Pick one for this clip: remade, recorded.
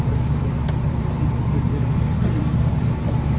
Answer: recorded